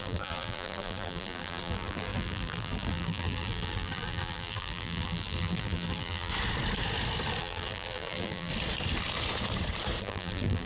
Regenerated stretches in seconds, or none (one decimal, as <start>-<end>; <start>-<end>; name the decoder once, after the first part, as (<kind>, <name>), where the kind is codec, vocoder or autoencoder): 0.0-6.3 (vocoder, BigVGAN v2); 7.4-8.5; 10.0-10.7